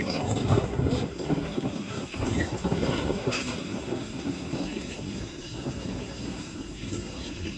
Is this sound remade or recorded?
remade